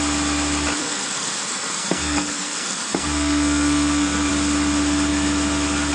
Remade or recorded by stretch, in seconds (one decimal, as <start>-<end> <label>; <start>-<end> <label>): 0.0-0.8 recorded; 0.8-4.3 remade; 4.3-5.9 recorded